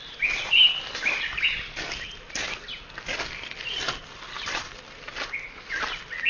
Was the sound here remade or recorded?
recorded